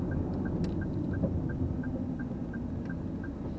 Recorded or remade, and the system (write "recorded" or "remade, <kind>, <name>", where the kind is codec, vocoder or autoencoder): recorded